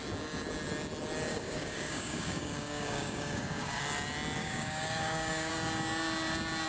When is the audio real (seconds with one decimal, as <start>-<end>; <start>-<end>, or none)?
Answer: 0.0-1.3; 3.8-4.4; 5.5-6.7